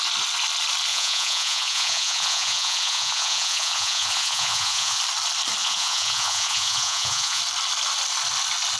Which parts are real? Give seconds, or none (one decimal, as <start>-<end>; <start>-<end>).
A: 0.0-0.9; 5.0-5.6; 7.4-8.8

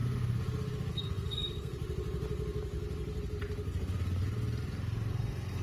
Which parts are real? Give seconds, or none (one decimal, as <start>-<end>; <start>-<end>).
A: 0.0-0.9; 1.7-5.1

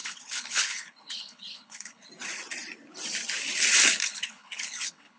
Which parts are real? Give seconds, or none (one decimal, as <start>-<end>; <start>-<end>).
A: 2.1-4.0

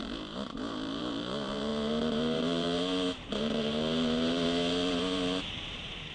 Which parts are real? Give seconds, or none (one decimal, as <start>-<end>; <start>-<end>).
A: none

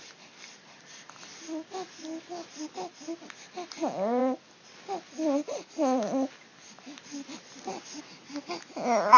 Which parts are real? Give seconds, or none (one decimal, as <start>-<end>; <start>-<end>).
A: 0.0-9.2

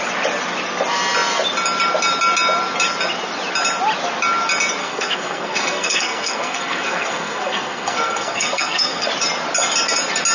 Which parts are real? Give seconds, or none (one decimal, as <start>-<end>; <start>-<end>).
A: 0.0-4.8; 9.1-10.3